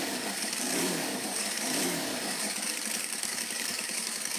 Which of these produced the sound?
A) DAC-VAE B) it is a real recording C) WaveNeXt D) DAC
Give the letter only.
D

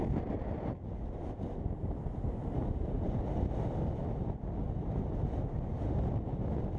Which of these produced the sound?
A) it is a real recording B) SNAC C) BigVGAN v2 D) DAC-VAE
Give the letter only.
A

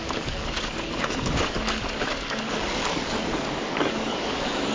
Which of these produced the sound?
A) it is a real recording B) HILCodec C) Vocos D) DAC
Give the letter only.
D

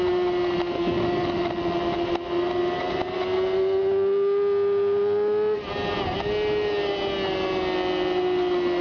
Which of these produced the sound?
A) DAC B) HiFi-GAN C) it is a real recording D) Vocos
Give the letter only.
C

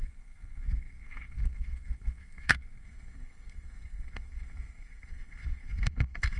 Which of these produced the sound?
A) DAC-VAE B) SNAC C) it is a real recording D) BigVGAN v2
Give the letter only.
B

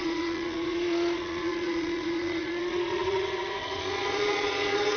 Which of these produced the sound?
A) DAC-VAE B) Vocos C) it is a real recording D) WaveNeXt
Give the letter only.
B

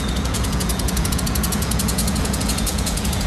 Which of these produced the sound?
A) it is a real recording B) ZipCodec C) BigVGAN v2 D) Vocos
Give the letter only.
D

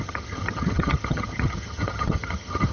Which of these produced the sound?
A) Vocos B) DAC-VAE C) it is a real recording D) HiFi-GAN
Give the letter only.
D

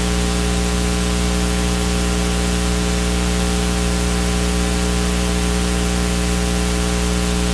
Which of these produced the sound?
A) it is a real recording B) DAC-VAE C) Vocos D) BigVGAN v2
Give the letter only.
A